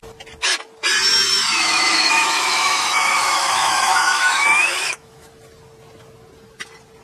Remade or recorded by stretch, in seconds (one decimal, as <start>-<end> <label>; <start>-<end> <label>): 0.0-1.4 recorded; 1.4-5.3 remade; 5.3-7.0 recorded